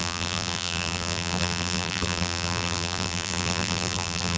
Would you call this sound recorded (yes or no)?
no